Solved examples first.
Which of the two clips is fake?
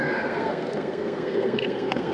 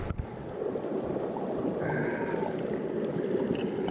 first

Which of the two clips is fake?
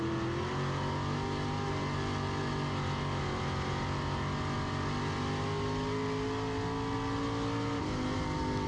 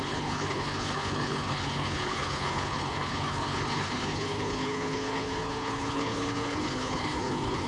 second